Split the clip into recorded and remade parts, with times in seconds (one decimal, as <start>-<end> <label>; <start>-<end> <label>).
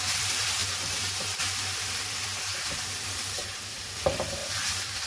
0.0-5.1 remade